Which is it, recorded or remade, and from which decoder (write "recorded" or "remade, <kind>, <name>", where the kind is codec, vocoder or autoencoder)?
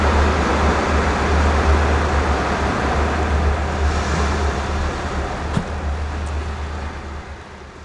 recorded